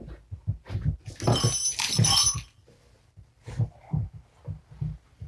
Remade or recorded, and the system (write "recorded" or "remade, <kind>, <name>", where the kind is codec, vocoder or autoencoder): recorded